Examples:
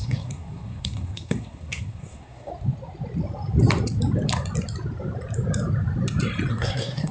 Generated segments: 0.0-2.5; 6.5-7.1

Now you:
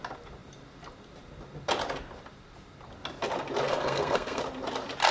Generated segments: 3.7-4.4

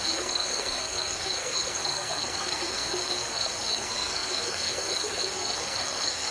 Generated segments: 0.0-6.3

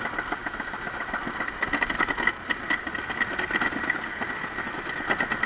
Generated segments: none

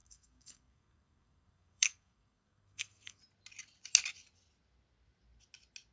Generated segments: 0.0-3.2